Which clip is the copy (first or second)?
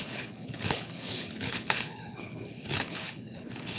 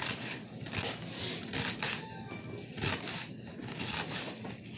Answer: first